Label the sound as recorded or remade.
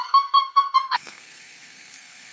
remade